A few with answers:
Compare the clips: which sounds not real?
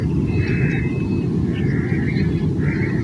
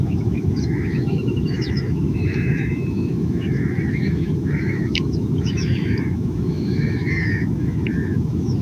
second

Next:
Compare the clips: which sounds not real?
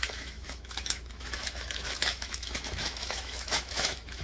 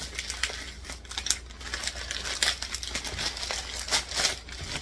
first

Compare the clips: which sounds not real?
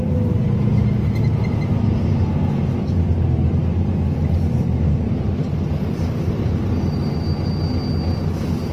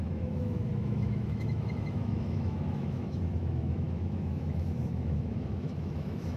second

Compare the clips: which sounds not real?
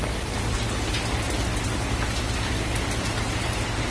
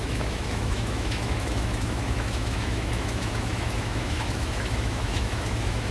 second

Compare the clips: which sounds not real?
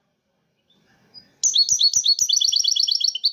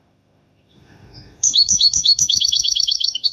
second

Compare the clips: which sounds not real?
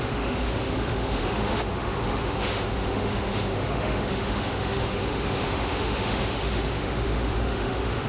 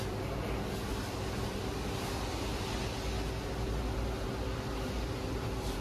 first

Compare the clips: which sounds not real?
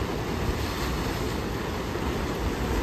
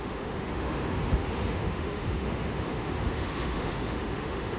second